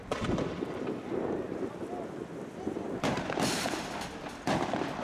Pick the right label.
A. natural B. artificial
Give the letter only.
A